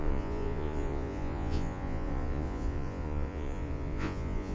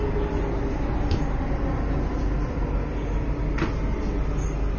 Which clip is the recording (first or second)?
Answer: second